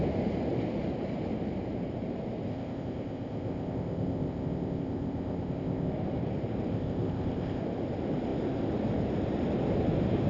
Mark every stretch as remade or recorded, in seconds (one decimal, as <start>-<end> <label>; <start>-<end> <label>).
0.0-2.5 recorded; 2.5-5.9 remade; 5.9-6.7 recorded; 6.7-7.6 remade; 7.6-10.3 recorded